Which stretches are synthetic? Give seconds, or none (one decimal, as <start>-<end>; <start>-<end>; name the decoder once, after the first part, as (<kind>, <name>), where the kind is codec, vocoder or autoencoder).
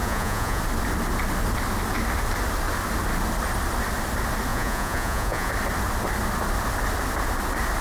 0.0-0.6 (vocoder, Vocos); 4.5-5.5